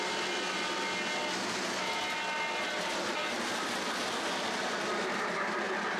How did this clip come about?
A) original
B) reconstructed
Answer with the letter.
A